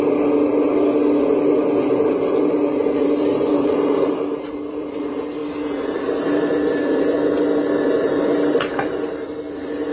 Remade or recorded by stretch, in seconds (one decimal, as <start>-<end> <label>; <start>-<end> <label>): 0.0-2.7 recorded; 2.7-5.0 remade; 5.0-5.4 recorded; 5.4-6.3 remade; 6.3-9.9 recorded